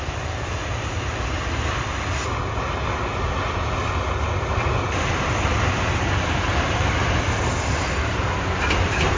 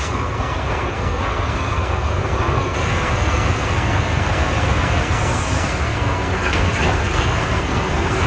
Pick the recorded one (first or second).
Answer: first